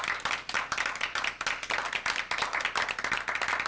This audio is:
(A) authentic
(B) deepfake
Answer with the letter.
A